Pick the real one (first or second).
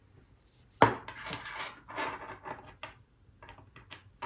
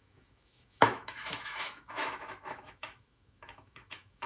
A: first